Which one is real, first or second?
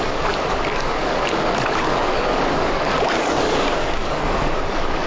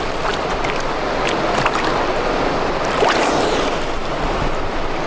second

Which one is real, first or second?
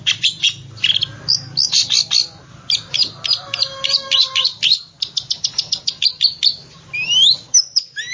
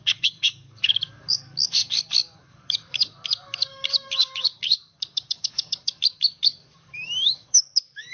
first